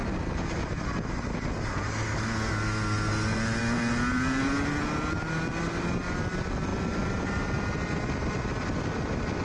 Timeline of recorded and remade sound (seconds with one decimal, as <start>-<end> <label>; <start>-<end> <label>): 0.0-6.7 recorded; 6.7-8.3 remade; 8.3-9.4 recorded